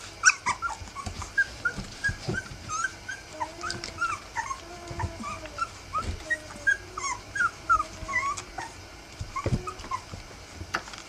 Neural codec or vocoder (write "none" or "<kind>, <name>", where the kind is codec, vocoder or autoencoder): none